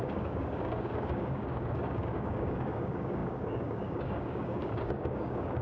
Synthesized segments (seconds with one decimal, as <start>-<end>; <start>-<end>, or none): 0.0-5.6